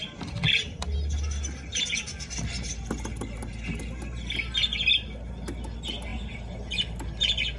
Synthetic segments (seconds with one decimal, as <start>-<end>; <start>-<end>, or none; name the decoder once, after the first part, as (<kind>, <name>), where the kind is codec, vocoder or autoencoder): none